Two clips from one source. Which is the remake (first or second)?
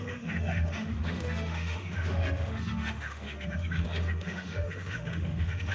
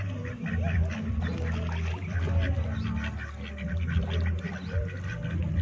first